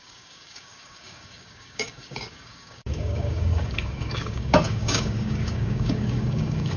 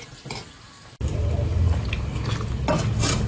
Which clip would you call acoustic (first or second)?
second